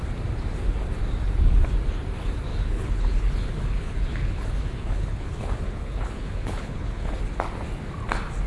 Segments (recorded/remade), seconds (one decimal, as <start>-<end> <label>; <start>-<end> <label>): 0.0-2.5 recorded; 2.5-7.2 remade; 7.2-8.5 recorded